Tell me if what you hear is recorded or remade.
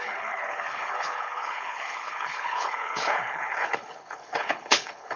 remade